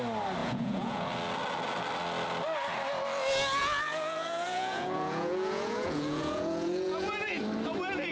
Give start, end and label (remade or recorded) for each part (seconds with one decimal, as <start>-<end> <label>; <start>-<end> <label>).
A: 0.0-0.4 recorded; 0.4-1.1 remade; 1.1-3.6 recorded; 3.6-7.4 remade; 7.4-8.1 recorded